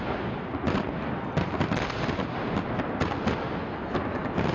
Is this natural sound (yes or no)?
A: yes